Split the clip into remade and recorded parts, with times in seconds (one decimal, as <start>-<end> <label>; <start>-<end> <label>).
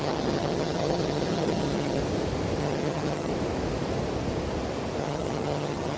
0.0-2.0 remade; 2.0-2.6 recorded; 2.6-3.3 remade; 3.3-5.0 recorded; 5.0-6.0 remade